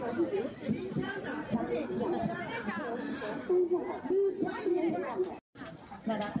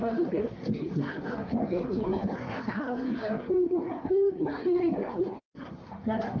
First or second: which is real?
first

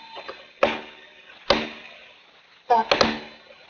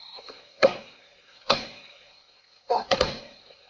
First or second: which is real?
first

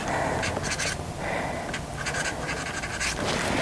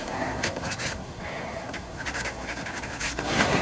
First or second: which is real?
first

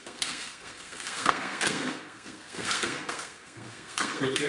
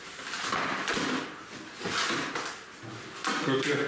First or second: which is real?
second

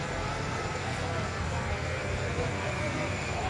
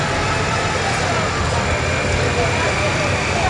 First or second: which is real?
second